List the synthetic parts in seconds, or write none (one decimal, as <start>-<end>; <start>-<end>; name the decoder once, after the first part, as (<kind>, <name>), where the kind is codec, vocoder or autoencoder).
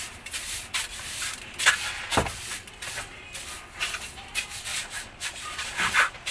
4.7-6.3 (vocoder, Vocos)